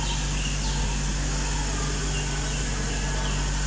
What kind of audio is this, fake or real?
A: real